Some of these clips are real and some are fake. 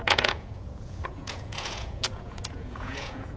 fake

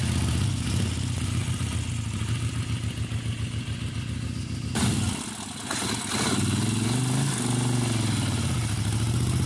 real